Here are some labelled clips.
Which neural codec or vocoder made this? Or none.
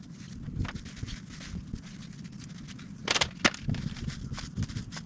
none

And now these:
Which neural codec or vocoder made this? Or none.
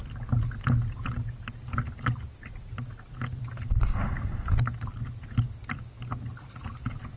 none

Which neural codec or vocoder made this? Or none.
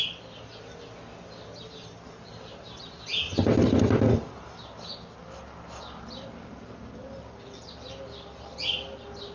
none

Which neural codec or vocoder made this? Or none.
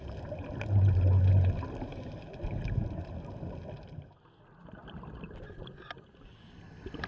none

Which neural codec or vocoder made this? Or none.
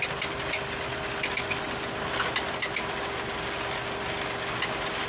none